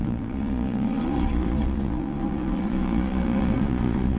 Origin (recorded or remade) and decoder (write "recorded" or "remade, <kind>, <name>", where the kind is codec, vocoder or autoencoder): remade, vocoder, Vocos